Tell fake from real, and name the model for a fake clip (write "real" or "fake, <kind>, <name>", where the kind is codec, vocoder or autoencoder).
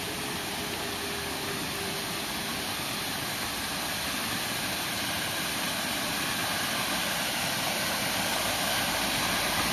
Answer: real